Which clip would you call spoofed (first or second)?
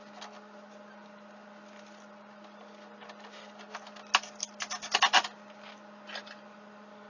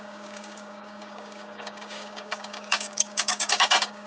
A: second